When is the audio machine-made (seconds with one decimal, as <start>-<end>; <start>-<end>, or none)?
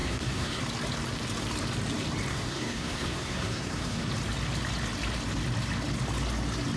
0.0-0.6; 2.3-4.1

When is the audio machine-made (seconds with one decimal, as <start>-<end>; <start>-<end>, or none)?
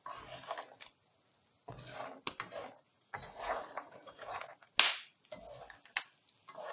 2.9-4.7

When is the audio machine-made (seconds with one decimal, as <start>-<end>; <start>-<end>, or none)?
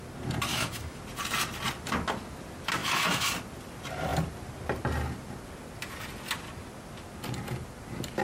0.5-1.0; 2.8-3.3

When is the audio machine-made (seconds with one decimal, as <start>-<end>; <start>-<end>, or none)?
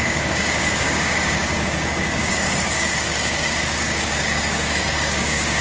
0.0-5.6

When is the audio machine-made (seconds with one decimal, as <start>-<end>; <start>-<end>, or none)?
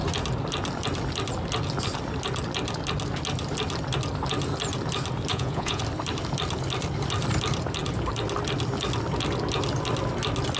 5.3-5.8